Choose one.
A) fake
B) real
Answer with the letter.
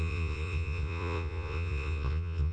A